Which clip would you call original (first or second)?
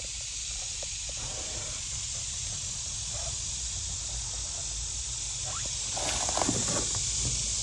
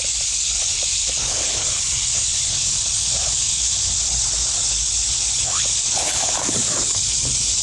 first